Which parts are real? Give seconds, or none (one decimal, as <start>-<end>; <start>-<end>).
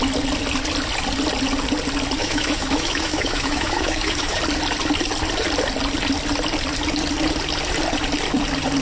0.0-2.2; 4.4-8.8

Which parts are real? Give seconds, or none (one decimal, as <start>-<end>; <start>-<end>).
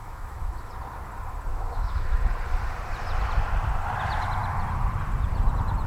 0.7-1.5; 2.2-5.9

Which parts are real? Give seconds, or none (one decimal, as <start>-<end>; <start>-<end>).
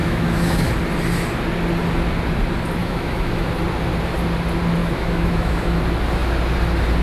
0.7-2.8; 3.5-4.8; 5.8-7.0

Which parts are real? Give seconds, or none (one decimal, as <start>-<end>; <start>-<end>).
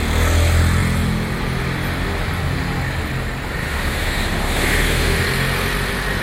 0.0-3.6; 5.2-6.2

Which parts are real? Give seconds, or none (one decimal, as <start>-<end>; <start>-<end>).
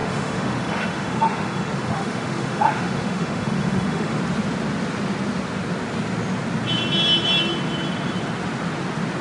4.2-9.2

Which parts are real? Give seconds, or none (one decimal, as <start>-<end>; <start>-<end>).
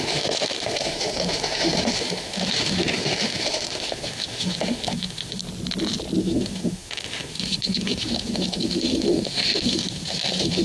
5.4-6.2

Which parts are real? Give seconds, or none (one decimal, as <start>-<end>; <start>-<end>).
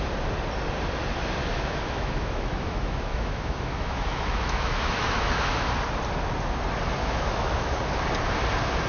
0.0-1.5; 5.7-7.0; 7.8-8.9